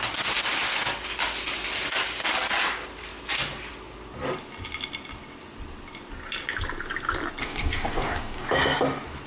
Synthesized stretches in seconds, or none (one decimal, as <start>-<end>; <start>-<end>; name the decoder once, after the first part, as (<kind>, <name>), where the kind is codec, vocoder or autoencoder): 7.4-8.5 (codec, DAC)